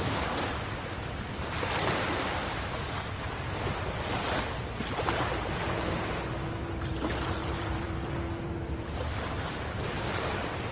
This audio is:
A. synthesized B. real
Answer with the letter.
A